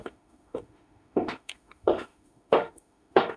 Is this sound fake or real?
fake